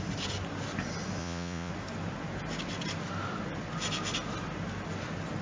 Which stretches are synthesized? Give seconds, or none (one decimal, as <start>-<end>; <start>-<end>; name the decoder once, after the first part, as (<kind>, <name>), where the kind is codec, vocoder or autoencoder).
1.2-1.7 (vocoder, Vocos)